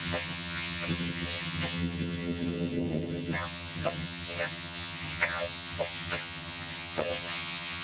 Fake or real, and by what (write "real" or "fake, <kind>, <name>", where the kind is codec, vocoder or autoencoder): fake, vocoder, HiFi-GAN